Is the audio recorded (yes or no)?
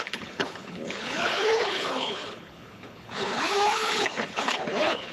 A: no